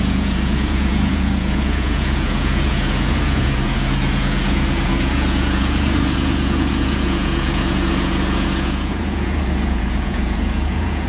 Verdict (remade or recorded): remade